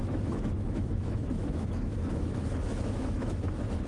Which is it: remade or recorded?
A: remade